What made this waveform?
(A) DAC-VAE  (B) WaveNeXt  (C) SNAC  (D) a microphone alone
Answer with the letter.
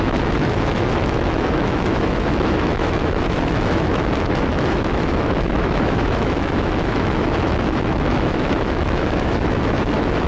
A